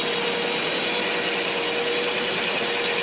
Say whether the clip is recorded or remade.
recorded